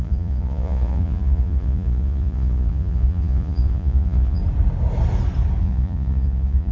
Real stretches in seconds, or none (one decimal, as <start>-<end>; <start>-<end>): 4.4-5.6